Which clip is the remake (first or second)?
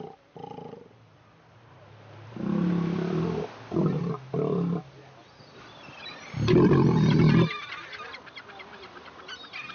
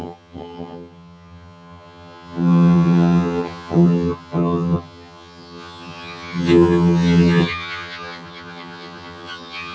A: second